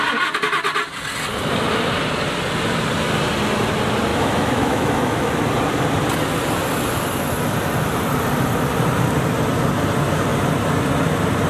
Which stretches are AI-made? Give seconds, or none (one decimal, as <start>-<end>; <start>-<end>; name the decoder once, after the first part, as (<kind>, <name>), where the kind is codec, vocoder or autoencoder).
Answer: 4.1-5.3 (autoencoder, DAC-VAE)